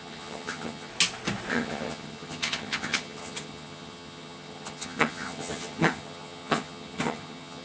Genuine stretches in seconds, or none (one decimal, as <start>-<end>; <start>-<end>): 0.9-1.5